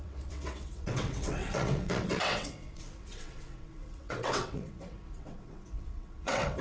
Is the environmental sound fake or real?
fake